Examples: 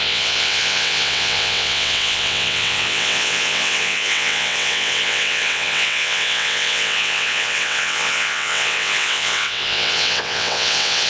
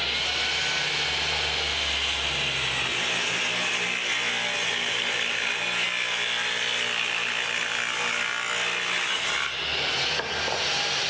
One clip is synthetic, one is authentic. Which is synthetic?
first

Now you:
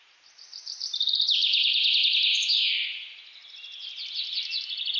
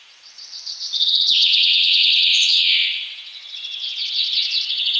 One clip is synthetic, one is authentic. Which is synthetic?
second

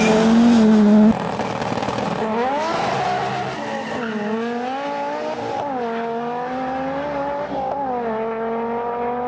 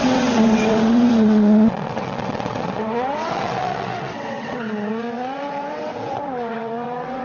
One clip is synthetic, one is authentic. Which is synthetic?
second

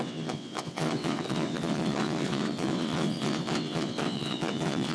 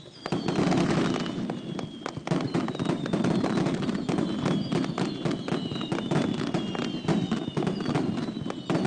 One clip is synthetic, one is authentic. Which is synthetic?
first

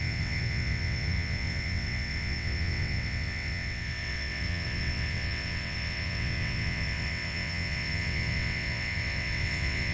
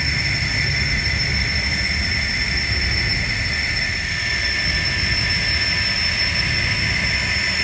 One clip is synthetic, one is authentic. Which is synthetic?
first